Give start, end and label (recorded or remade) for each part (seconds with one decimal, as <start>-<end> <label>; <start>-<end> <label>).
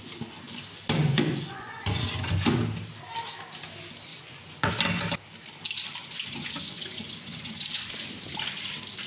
0.0-1.0 recorded; 1.0-2.6 remade; 2.6-4.1 recorded; 4.1-4.7 remade; 4.7-6.0 recorded; 6.0-8.1 remade; 8.1-9.1 recorded